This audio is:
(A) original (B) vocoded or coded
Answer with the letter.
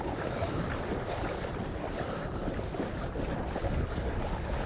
A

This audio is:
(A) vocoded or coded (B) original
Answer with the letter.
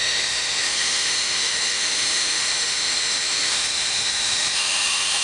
A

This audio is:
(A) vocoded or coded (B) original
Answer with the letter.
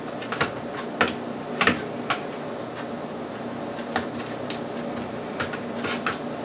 B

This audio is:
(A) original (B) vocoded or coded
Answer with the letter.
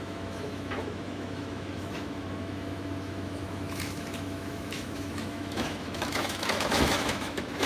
B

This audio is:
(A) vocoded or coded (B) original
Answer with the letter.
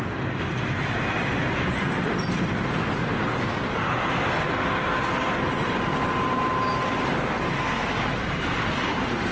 B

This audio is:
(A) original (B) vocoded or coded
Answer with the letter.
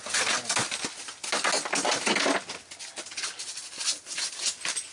A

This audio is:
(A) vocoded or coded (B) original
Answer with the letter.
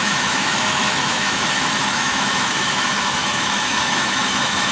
A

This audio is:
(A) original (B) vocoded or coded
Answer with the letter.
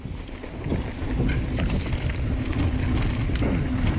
A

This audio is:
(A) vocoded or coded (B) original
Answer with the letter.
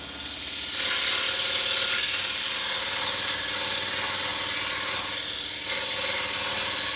B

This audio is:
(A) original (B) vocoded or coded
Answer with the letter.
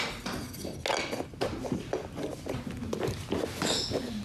A